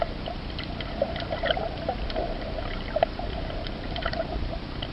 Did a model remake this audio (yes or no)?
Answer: no